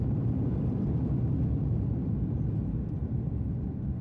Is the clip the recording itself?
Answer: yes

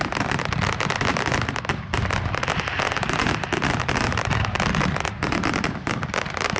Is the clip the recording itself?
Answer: yes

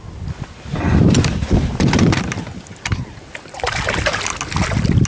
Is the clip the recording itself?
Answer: yes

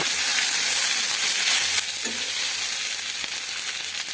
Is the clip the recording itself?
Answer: yes